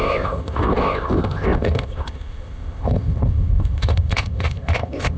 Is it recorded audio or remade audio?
remade